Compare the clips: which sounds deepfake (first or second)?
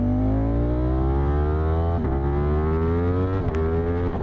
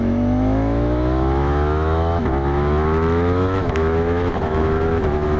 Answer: second